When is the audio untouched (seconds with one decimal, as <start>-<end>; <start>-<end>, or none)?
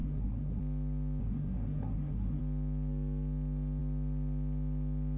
0.6-1.2; 2.4-5.2